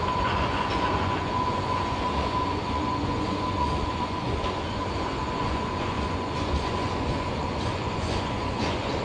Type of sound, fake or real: fake